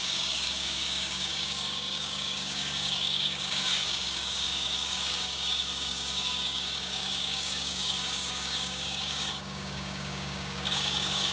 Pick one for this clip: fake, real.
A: fake